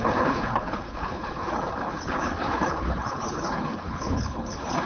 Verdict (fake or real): fake